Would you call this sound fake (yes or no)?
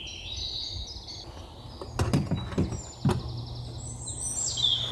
no